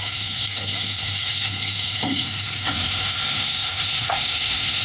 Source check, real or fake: fake